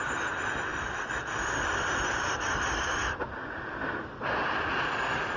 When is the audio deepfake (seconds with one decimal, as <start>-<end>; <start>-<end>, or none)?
none